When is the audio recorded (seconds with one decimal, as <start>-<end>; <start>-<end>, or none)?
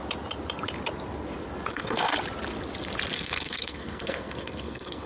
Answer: 0.0-1.7; 2.1-3.1